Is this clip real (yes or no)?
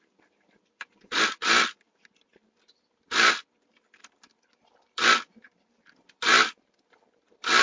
no